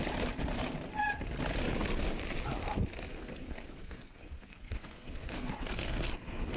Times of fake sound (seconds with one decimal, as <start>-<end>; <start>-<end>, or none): 3.2-6.6